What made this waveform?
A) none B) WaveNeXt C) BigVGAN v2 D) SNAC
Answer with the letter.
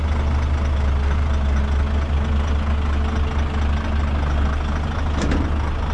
A